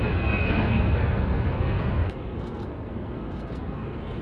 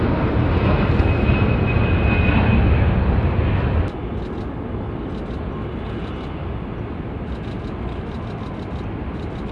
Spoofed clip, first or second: first